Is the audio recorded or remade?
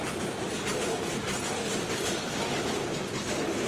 recorded